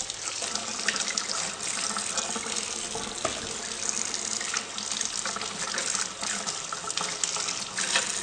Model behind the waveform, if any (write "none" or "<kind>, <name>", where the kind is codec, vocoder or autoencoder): none